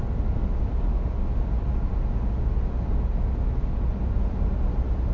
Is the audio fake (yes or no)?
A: no